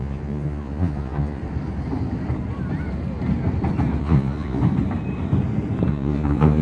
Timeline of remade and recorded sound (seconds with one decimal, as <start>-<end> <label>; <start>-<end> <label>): 0.0-1.4 remade; 1.4-4.0 recorded; 4.0-4.6 remade; 4.6-5.9 recorded; 5.9-6.6 remade